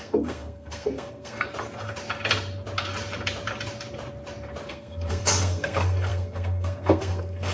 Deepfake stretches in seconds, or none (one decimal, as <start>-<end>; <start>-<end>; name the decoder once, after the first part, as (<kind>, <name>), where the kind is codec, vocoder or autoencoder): 0.0-1.5 (codec, SNAC); 4.7-7.5